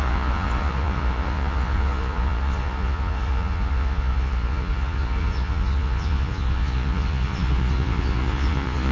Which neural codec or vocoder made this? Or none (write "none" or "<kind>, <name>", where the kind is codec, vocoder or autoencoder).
vocoder, Vocos